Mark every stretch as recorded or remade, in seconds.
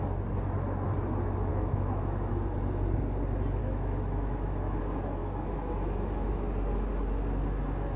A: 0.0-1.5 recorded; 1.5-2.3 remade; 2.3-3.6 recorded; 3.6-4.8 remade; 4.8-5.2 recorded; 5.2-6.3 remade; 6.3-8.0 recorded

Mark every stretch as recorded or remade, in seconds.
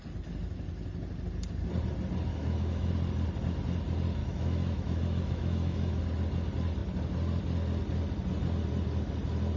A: 0.0-2.3 recorded; 2.3-2.9 remade; 2.9-4.2 recorded; 4.2-6.0 remade; 6.0-9.6 recorded